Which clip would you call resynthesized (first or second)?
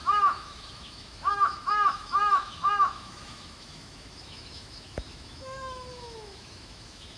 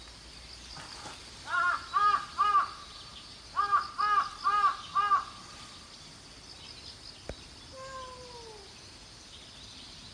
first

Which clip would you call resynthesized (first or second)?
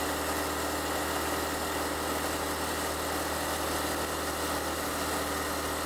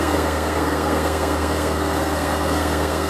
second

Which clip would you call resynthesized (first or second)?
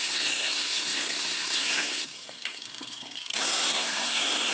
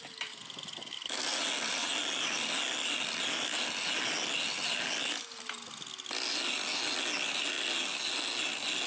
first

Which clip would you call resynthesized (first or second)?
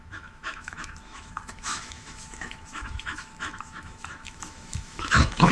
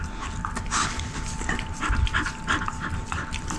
first